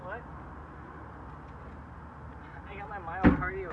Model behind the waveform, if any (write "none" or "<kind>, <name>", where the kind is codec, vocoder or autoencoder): none